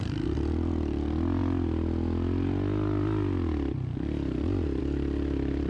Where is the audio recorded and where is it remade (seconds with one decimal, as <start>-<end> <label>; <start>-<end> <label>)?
0.0-5.7 recorded